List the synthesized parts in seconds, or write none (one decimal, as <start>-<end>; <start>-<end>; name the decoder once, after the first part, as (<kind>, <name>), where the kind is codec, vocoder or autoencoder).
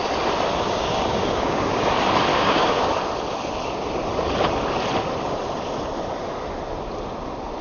0.5-1.8 (codec, DAC); 2.3-2.9